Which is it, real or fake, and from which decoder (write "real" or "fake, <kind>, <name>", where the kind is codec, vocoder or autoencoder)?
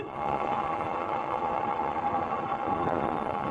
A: fake, vocoder, Vocos